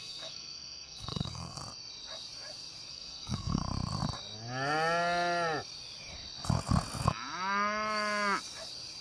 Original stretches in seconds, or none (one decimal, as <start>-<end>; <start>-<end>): 1.6-2.9; 3.6-9.0